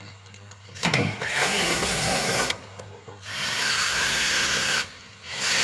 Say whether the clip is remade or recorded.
remade